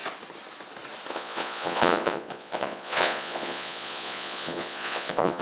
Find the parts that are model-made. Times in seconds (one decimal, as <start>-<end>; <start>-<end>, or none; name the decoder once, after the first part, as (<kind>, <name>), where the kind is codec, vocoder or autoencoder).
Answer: 1.1-5.4 (vocoder, Vocos)